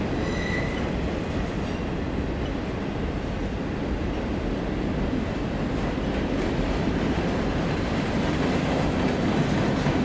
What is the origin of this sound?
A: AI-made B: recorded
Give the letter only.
B